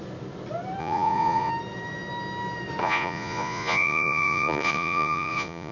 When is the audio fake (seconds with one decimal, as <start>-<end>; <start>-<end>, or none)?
0.8-1.5; 2.8-5.7